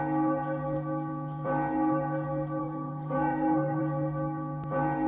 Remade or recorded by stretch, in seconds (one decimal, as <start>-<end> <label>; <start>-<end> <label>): 0.0-2.6 recorded; 2.6-3.8 remade; 3.8-5.1 recorded